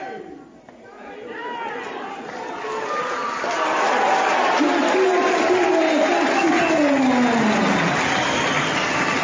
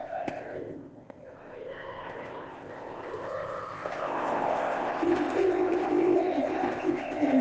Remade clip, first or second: second